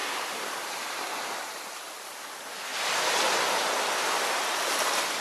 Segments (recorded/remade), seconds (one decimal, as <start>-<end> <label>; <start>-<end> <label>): 0.0-1.1 remade; 1.1-5.2 recorded